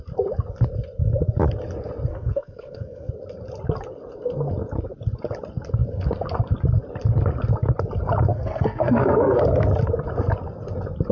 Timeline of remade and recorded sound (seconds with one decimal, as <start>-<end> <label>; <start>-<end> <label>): 0.0-2.1 recorded; 2.1-3.1 remade; 3.1-8.3 recorded; 8.3-9.4 remade; 9.4-11.1 recorded